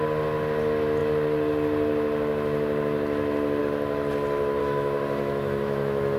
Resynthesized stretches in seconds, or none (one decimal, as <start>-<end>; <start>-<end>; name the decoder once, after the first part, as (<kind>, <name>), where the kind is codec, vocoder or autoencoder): 4.6-6.2 (autoencoder, DAC-VAE)